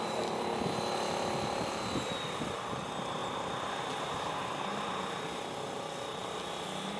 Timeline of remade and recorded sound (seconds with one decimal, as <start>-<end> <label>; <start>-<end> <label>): 0.0-7.0 recorded